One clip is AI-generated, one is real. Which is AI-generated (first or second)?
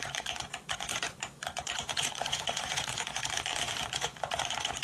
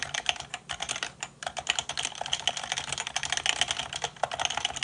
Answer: first